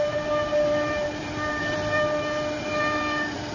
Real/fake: fake